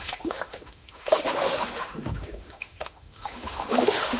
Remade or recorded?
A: remade